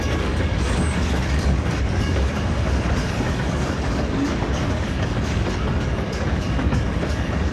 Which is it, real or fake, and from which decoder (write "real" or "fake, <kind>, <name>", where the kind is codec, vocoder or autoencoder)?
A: fake, codec, DAC